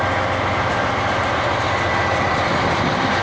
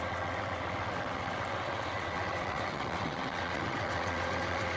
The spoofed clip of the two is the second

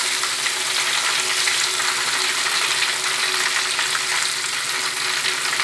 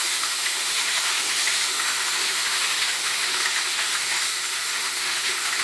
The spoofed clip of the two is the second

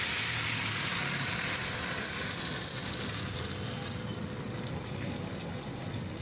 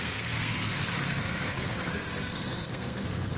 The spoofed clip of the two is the second